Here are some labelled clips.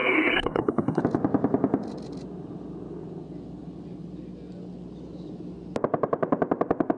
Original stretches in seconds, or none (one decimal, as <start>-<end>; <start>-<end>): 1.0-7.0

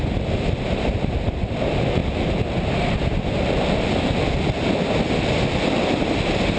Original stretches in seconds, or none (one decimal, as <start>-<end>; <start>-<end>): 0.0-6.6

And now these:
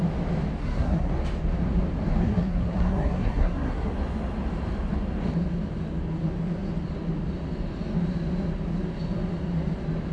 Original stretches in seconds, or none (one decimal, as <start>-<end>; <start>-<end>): 0.0-0.6; 1.1-2.2; 3.9-10.1